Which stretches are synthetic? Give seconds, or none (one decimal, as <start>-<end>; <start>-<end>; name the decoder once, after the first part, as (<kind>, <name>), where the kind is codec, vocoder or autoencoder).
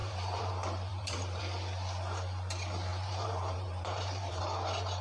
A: 0.0-0.5 (vocoder, BigVGAN v2); 0.9-1.4; 2.9-4.4